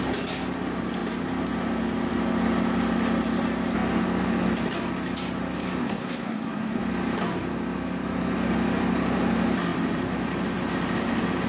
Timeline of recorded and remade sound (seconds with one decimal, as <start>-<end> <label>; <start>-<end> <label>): 0.0-5.8 recorded; 5.8-6.8 remade; 6.8-11.5 recorded